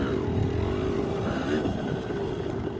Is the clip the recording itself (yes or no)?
yes